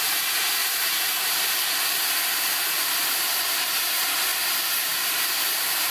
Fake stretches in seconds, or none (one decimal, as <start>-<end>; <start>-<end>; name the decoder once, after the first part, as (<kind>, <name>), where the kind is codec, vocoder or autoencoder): 0.0-4.3 (vocoder, BigVGAN v2); 4.8-5.9